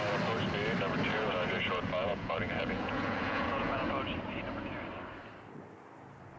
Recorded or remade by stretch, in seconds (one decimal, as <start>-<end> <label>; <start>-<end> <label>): 0.0-1.1 recorded; 1.1-3.9 remade; 3.9-6.4 recorded